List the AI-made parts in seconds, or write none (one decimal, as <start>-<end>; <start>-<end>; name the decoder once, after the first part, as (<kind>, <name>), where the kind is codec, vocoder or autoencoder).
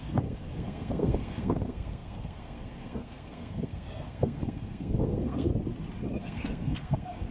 0.0-5.5 (codec, SNAC); 6.2-7.3